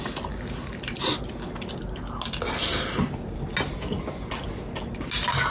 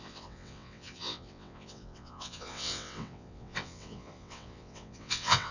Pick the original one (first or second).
first